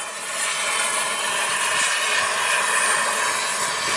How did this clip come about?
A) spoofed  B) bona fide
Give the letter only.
B